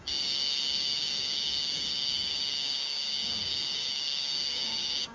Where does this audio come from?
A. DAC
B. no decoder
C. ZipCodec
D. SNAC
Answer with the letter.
A